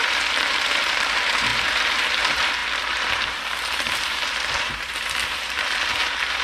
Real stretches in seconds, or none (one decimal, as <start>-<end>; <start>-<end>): none